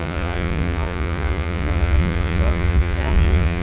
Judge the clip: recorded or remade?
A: remade